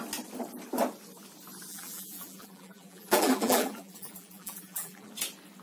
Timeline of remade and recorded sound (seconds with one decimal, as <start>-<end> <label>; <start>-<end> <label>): 0.0-1.7 recorded; 1.7-5.1 remade; 5.1-5.6 recorded